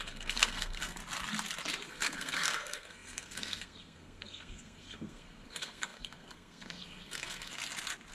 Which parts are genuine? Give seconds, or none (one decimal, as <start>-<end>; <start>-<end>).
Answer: 1.0-1.9; 7.6-8.1